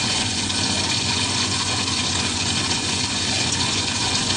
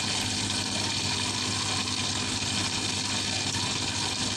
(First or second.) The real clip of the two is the second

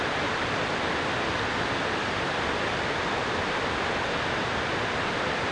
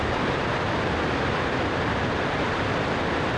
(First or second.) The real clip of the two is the first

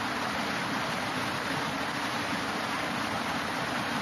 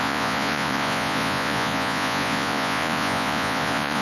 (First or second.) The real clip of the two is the first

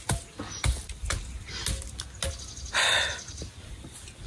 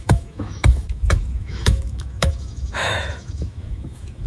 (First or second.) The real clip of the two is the first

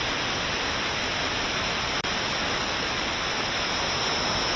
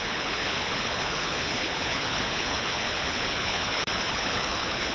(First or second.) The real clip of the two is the first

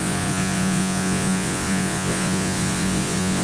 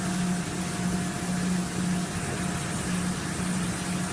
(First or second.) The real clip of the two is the second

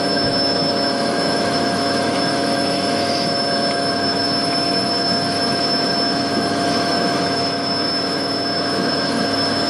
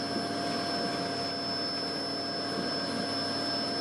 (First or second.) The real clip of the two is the second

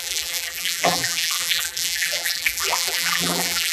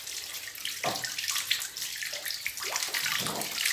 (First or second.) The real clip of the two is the second